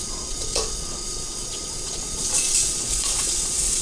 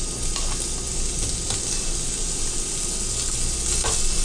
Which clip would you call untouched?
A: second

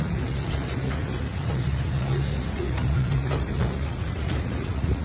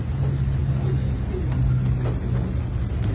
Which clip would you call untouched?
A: second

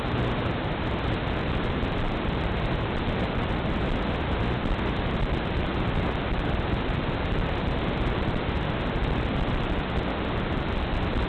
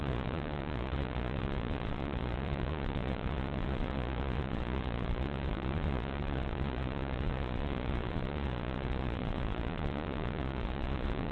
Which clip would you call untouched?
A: first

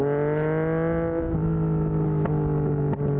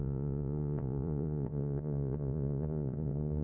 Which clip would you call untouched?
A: first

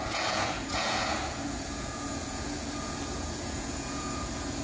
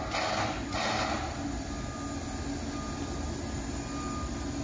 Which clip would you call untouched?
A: second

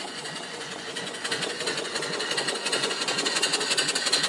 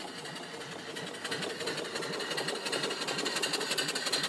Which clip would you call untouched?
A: second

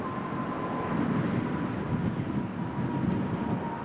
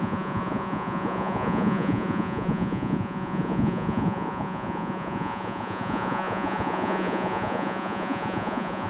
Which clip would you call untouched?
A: first